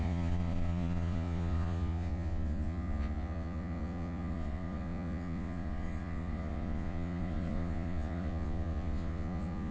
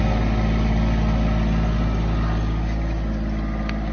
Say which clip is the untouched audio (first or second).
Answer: second